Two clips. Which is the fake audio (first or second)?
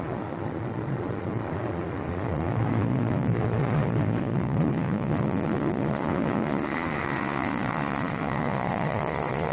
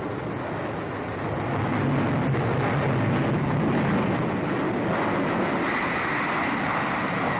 first